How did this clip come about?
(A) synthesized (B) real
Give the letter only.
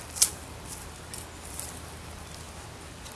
B